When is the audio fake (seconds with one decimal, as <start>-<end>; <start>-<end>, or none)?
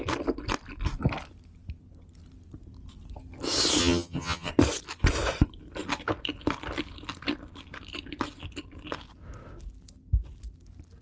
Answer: 3.8-4.5